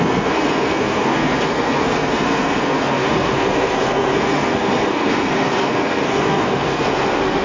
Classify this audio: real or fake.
fake